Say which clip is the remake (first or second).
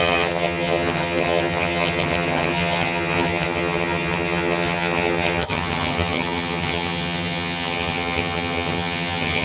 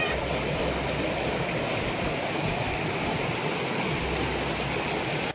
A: first